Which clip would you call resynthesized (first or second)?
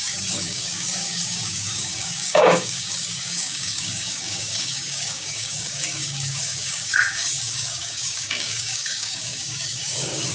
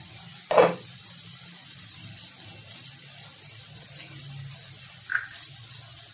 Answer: first